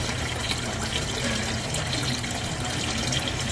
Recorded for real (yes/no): yes